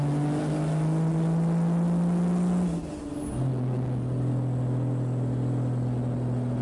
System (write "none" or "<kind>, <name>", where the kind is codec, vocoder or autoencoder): none